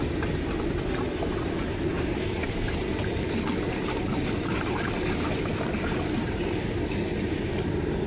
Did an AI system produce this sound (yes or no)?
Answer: no